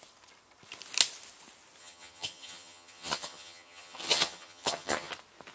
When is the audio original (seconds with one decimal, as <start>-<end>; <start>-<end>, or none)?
0.0-1.8; 5.1-5.5